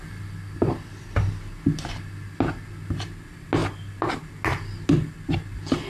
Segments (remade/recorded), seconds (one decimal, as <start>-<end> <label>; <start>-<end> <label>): 0.0-5.9 recorded